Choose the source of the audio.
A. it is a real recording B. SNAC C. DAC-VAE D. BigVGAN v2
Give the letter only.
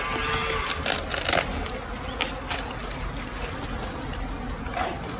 A